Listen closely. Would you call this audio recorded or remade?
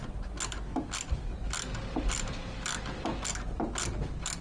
recorded